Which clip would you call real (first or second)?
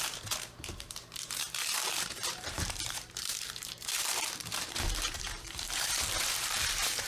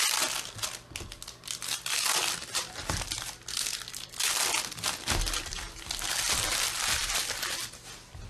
second